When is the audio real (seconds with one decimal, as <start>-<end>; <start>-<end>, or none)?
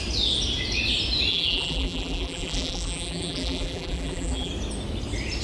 0.0-1.3; 4.5-5.4